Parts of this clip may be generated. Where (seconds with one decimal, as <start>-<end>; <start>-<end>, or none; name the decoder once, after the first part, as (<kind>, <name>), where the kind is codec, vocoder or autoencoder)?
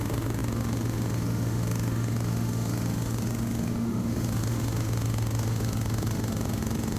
0.0-7.0 (autoencoder, DAC-VAE)